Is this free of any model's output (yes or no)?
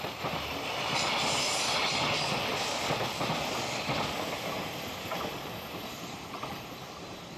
yes